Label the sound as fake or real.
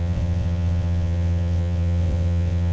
fake